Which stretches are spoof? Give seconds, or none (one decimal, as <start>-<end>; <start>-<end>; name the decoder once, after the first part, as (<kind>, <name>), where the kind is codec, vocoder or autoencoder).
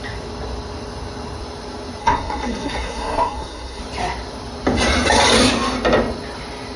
2.0-3.8 (codec, SNAC)